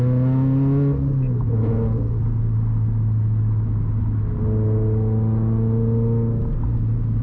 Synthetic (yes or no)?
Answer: no